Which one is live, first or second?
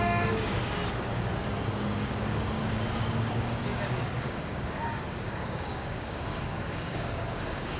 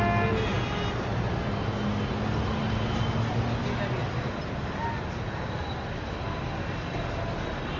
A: second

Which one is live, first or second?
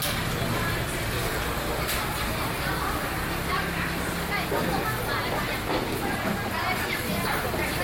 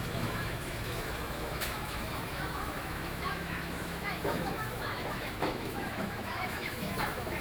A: first